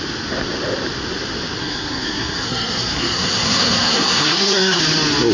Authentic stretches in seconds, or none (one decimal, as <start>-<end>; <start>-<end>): 0.0-1.6; 4.8-5.3